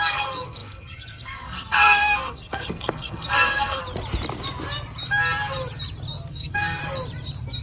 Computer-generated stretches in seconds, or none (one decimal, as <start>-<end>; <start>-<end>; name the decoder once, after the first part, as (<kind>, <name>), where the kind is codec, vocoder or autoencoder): 0.0-3.8 (codec, SNAC); 6.3-6.8